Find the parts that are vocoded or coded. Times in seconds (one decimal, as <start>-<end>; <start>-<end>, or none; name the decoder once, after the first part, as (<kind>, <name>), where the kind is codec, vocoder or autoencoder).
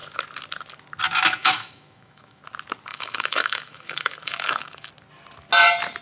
1.4-2.4 (autoencoder, DAC-VAE); 2.9-4.9